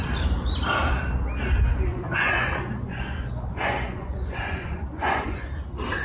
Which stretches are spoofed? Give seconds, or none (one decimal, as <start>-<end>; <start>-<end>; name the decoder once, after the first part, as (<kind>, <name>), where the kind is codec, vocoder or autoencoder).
1.9-5.5 (vocoder, Vocos)